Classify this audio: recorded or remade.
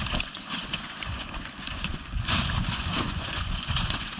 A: remade